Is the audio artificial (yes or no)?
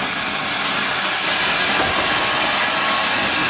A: no